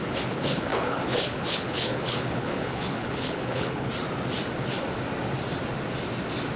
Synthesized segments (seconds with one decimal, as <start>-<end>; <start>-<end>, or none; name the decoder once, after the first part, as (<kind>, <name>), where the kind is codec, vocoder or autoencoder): 0.0-3.9 (codec, HILCodec)